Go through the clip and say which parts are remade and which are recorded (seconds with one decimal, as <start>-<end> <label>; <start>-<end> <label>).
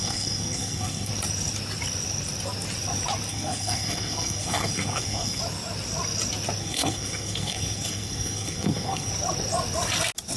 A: 0.0-1.1 remade; 1.1-3.3 recorded; 3.3-5.4 remade; 5.4-6.6 recorded; 6.6-9.1 remade; 9.1-10.4 recorded